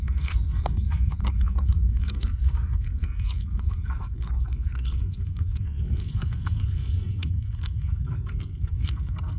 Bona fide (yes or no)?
no